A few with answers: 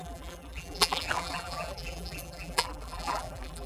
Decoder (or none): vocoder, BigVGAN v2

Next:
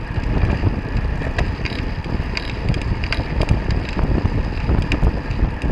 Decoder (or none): none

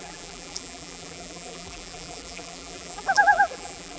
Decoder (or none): vocoder, BigVGAN v2